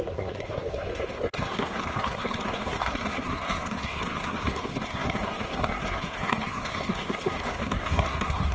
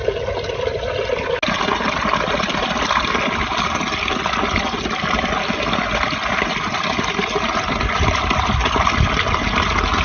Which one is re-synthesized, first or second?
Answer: first